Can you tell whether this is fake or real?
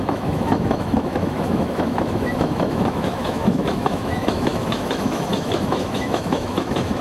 fake